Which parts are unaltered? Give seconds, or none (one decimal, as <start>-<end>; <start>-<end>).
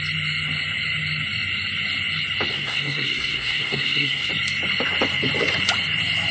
0.0-2.5; 4.3-6.3